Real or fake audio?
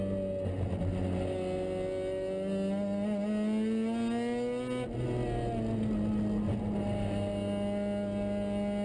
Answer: real